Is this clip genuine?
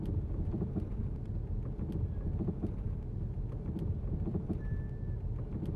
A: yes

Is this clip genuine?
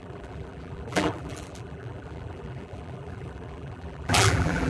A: no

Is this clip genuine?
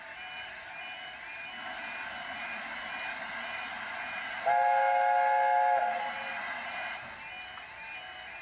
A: yes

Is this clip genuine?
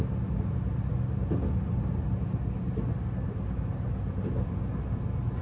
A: yes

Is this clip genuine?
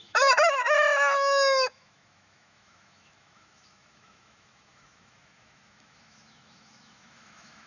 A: no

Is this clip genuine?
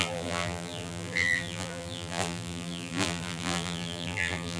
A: no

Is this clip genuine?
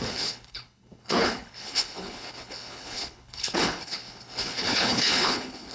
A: no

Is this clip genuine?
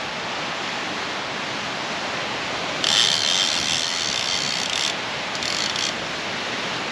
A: yes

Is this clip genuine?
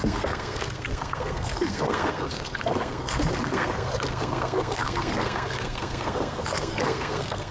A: no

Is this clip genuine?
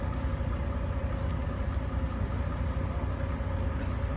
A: yes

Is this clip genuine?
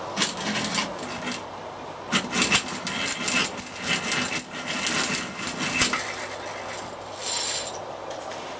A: yes